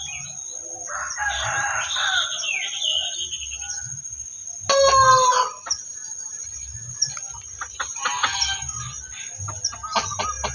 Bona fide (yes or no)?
yes